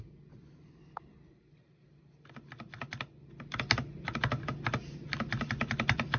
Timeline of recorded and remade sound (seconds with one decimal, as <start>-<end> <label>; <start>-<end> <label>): 0.0-6.2 recorded